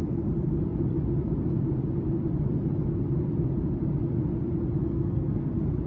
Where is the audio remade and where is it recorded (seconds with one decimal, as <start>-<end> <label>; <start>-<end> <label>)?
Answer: 0.0-4.8 recorded; 4.8-5.5 remade; 5.5-5.9 recorded